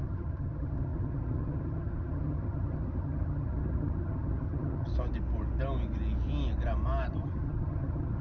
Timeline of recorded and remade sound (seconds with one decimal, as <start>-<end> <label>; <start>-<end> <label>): 0.0-4.9 remade; 4.9-7.1 recorded; 7.1-8.2 remade